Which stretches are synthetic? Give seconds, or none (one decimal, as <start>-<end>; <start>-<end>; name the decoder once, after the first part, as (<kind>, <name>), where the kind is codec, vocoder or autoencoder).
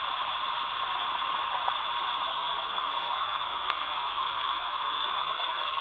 2.3-5.8 (codec, SNAC)